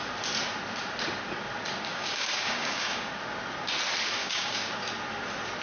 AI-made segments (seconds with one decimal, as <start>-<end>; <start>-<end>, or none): 1.9-3.1; 4.2-4.7